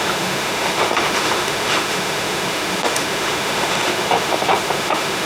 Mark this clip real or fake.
fake